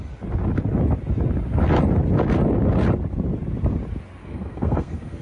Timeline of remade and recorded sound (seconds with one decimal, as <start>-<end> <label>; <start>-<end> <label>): 0.0-4.2 recorded; 4.2-5.2 remade